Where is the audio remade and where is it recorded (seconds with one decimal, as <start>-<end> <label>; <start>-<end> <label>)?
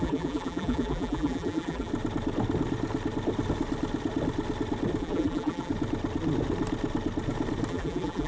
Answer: 0.0-1.9 remade; 1.9-5.0 recorded; 5.0-5.7 remade; 5.7-7.7 recorded; 7.7-8.3 remade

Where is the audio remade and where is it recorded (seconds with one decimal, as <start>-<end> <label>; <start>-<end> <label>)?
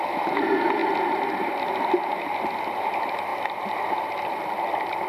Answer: 0.0-0.8 recorded; 0.8-2.6 remade; 2.6-3.3 recorded; 3.3-4.6 remade; 4.6-5.1 recorded